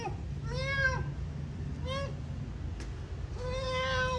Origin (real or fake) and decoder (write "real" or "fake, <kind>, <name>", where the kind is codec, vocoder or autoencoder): real